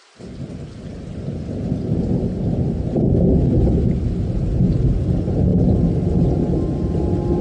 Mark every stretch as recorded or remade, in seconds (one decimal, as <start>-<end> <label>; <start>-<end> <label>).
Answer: 0.0-7.4 recorded